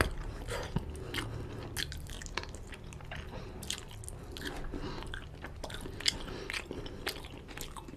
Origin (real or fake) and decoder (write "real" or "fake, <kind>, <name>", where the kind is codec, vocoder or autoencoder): real